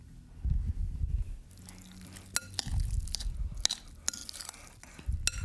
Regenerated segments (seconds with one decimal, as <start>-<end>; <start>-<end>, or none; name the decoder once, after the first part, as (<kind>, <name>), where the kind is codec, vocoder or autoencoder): none